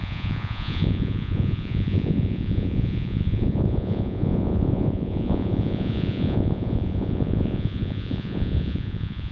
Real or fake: fake